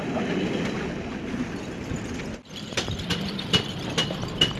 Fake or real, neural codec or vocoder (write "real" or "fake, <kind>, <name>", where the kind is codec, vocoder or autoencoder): real